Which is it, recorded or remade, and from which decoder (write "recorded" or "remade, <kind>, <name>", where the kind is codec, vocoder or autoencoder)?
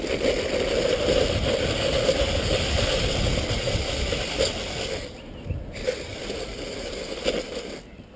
recorded